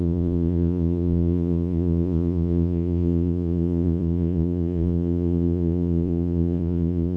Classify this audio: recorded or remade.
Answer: remade